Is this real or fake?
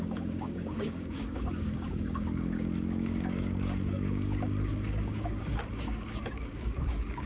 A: fake